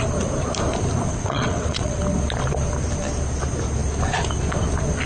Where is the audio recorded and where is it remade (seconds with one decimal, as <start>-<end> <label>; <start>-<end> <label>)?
0.0-1.1 recorded; 1.1-2.0 remade; 2.0-5.1 recorded